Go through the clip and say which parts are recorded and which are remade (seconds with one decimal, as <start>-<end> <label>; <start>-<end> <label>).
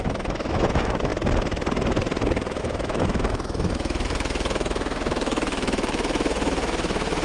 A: 0.0-1.1 remade; 1.1-2.6 recorded; 2.6-7.2 remade